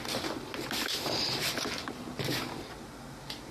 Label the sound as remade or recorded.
recorded